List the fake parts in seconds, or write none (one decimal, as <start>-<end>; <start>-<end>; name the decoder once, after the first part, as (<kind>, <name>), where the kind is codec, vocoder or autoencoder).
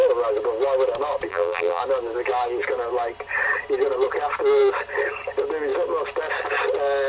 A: 1.3-1.8 (vocoder, BigVGAN v2)